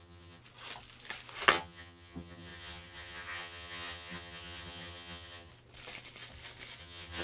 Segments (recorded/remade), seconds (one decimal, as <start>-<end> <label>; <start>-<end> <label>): 0.0-0.4 remade; 0.4-1.5 recorded; 1.5-5.5 remade; 5.5-6.8 recorded; 6.8-7.2 remade